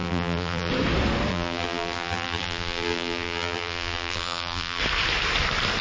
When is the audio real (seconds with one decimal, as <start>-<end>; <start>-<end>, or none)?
0.7-1.3; 4.8-5.8

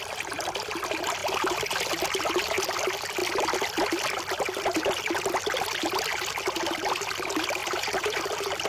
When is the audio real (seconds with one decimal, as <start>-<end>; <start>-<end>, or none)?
0.0-7.6; 8.2-8.7

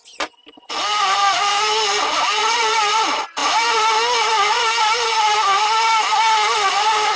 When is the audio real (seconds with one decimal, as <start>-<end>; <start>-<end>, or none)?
0.0-0.4; 1.5-2.4; 2.9-7.2

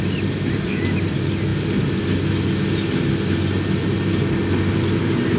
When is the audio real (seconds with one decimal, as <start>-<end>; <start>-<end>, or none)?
0.0-5.4

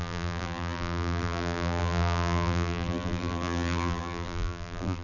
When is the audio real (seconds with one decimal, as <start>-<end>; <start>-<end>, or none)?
none

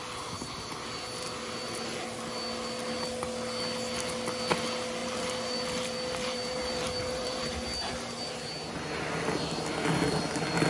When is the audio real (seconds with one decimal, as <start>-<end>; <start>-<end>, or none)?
0.0-5.0; 7.5-10.7

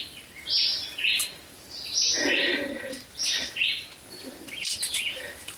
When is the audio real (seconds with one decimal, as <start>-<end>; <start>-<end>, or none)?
0.7-1.6; 2.5-4.8

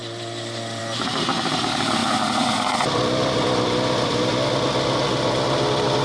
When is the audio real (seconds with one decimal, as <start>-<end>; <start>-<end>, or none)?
4.3-5.0